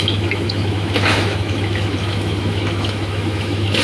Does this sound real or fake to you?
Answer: fake